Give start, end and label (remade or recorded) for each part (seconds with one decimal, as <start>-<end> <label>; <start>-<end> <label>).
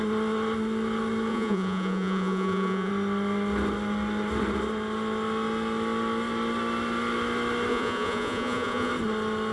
0.0-1.3 recorded; 1.3-2.9 remade; 2.9-7.7 recorded; 7.7-8.9 remade; 8.9-9.5 recorded